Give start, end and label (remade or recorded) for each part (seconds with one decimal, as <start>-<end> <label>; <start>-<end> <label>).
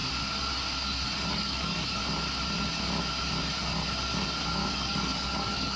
0.0-1.3 recorded; 1.3-2.0 remade; 2.0-4.7 recorded; 4.7-5.8 remade